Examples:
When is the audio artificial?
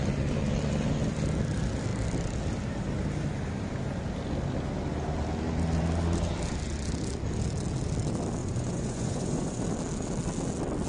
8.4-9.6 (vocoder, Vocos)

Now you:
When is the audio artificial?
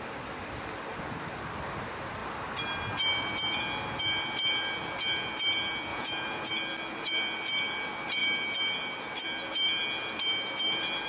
5.9-6.5 (vocoder, Vocos)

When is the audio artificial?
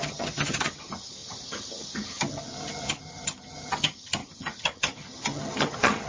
0.0-6.1 (vocoder, HiFi-GAN)